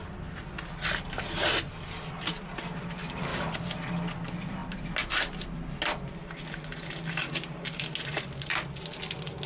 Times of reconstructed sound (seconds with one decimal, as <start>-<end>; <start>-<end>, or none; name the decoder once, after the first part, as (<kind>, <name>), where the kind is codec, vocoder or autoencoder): none